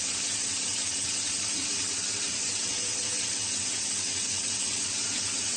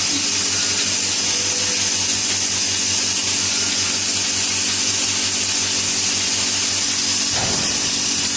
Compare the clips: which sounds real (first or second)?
second